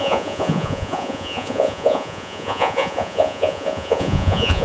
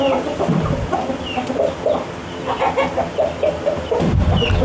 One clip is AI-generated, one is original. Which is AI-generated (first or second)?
first